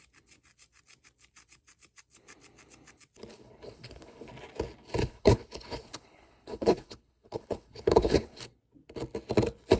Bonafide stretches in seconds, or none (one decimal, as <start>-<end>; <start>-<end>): 0.0-3.3; 4.3-5.0; 8.4-9.8